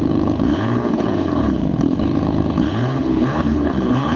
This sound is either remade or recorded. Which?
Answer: remade